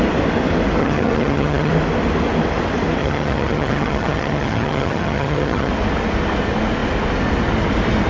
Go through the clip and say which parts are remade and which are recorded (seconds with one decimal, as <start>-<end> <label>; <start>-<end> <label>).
0.0-0.8 recorded; 0.8-1.7 remade; 1.7-3.0 recorded; 3.0-5.7 remade; 5.7-8.1 recorded